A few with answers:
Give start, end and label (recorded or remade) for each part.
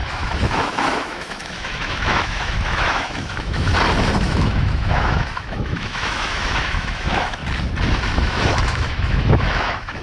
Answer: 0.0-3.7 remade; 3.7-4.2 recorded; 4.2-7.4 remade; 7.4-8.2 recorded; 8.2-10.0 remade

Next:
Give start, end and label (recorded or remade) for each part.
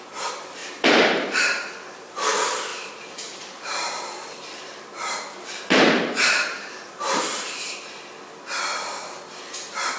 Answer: 0.0-0.6 recorded; 0.6-2.1 remade; 2.1-2.7 recorded; 2.7-7.2 remade; 7.2-10.0 recorded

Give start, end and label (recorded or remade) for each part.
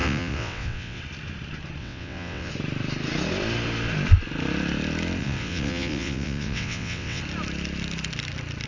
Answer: 0.0-1.0 remade; 1.0-1.8 recorded; 1.8-2.5 remade; 2.5-5.2 recorded; 5.2-7.2 remade; 7.2-8.7 recorded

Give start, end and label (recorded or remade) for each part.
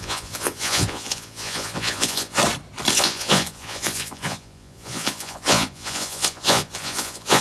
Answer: 0.0-2.4 remade; 2.4-2.9 recorded; 2.9-7.4 remade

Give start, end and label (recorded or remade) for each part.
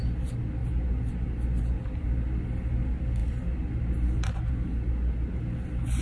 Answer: 0.0-6.0 recorded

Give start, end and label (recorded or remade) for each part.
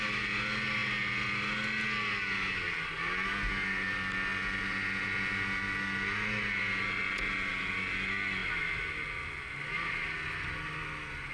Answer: 0.0-11.3 recorded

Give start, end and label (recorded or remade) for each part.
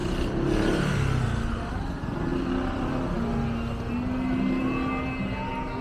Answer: 0.0-5.8 recorded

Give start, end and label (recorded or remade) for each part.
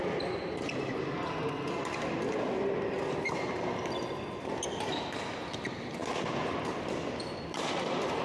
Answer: 0.0-8.2 recorded